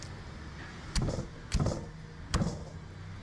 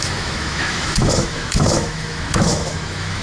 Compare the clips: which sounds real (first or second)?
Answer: first